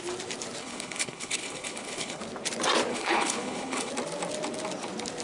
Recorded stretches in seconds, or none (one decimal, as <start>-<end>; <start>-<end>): 0.0-0.6; 2.2-2.9; 3.9-5.2